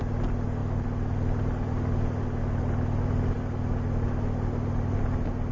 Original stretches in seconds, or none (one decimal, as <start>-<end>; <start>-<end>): 0.0-5.5